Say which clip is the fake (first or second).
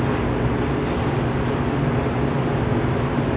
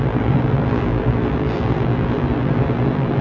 second